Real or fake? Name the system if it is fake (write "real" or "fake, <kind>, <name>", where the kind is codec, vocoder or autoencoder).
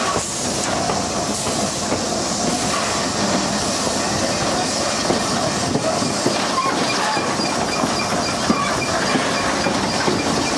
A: real